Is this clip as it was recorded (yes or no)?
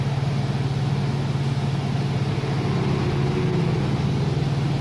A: yes